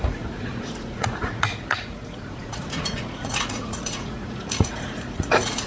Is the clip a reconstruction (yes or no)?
yes